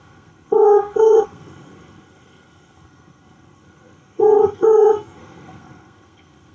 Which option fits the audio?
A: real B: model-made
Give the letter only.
B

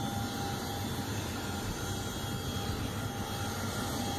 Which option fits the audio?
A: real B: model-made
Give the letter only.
A